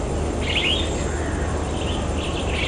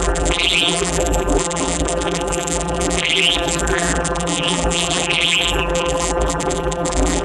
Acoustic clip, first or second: first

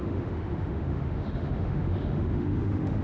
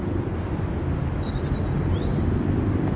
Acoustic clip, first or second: second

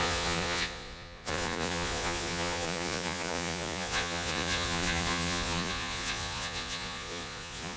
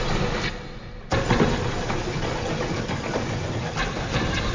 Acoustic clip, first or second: second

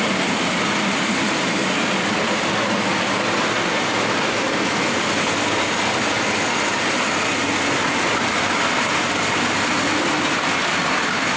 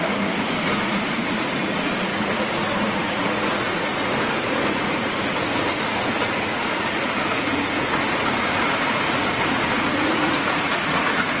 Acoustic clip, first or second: first